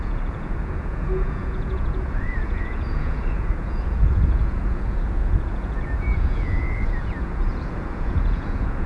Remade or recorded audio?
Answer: remade